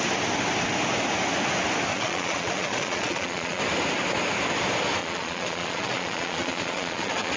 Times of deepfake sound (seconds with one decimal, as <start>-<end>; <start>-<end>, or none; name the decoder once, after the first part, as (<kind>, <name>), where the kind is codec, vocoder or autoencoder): 1.9-3.6 (vocoder, Vocos); 5.0-7.4